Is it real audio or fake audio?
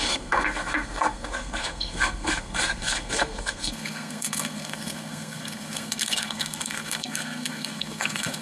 fake